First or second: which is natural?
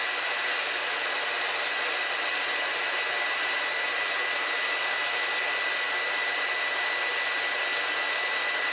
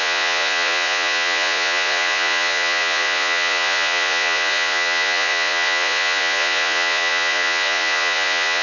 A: first